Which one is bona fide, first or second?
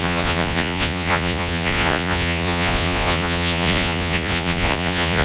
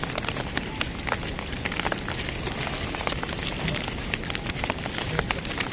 second